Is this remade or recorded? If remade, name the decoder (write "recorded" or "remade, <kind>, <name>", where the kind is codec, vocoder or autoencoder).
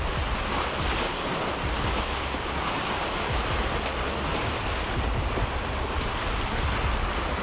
recorded